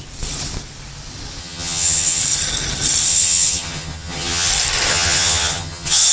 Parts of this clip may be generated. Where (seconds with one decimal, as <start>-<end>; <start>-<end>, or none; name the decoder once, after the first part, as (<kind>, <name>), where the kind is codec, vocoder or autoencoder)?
1.4-2.2 (vocoder, HiFi-GAN); 3.1-4.5; 4.9-6.1